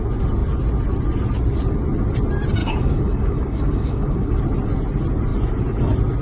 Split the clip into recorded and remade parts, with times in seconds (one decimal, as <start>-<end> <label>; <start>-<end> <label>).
0.0-2.6 recorded; 2.6-4.4 remade; 4.4-6.2 recorded